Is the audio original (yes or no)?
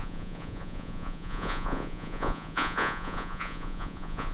no